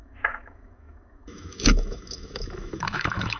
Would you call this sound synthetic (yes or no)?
yes